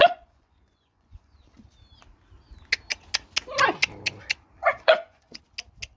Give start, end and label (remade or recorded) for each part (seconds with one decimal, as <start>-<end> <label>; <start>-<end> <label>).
0.0-1.4 remade; 1.4-4.6 recorded; 4.6-5.4 remade; 5.4-6.0 recorded